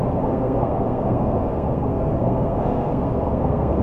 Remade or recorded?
remade